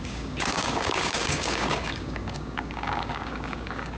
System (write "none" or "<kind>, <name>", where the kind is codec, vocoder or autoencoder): codec, DAC